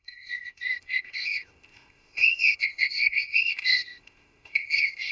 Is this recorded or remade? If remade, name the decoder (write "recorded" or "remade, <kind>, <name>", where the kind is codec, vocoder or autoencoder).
remade, codec, ZipCodec